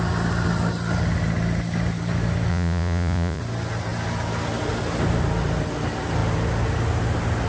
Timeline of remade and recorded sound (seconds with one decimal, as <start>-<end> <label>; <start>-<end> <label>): 0.0-2.5 recorded; 2.5-3.4 remade; 3.4-7.5 recorded